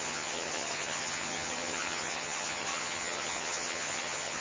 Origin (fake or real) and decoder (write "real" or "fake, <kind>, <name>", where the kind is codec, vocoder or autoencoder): fake, vocoder, HiFi-GAN